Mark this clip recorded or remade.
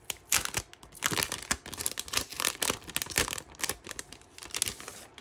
recorded